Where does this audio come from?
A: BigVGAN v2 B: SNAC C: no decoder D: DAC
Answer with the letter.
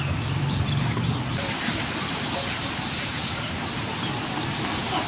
A